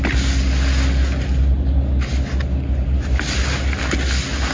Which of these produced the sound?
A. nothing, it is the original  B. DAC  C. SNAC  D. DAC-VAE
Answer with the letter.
A